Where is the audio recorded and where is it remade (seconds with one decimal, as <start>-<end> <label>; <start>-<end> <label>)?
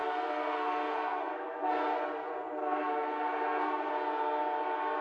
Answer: 0.0-1.7 remade; 1.7-2.6 recorded; 2.6-3.9 remade; 3.9-5.0 recorded